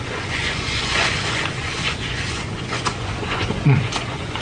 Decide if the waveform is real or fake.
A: fake